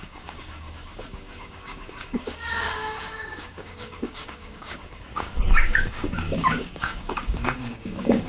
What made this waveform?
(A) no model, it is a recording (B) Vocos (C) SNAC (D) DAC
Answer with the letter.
D